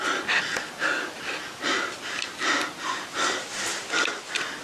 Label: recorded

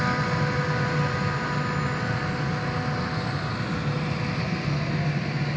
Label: recorded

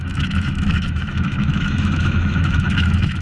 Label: remade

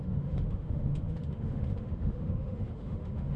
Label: remade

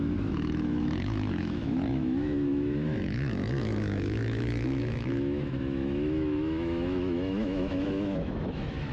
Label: remade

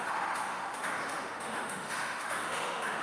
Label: remade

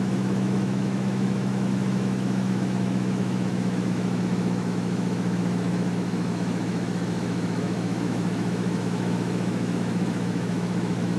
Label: remade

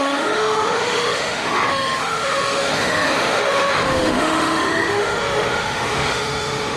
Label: remade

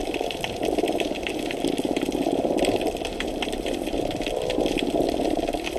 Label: recorded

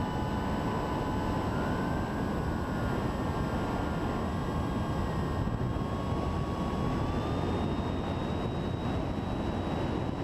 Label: recorded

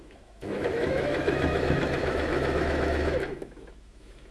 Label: remade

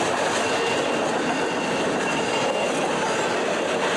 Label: recorded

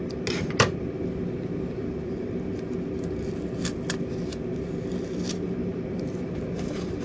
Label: recorded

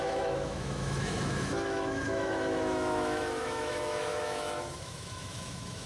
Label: remade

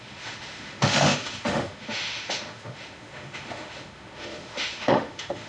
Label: remade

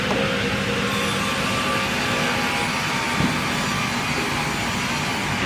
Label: recorded